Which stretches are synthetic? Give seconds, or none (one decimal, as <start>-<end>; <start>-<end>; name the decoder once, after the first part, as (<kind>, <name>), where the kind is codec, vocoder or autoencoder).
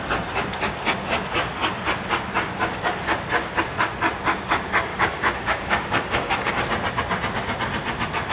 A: 4.9-6.5 (codec, DAC)